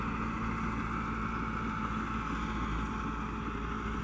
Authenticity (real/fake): real